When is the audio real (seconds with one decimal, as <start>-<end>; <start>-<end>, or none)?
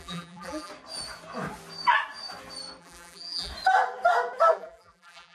0.7-2.8; 3.5-4.5